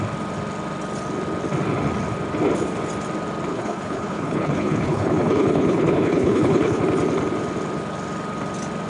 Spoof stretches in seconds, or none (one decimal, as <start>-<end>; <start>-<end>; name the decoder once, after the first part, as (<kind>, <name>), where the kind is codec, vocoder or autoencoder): 3.5-6.8 (codec, HILCodec)